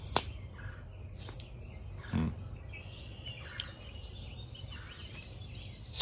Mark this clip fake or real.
real